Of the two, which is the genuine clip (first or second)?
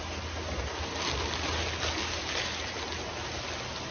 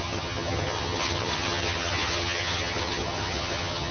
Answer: first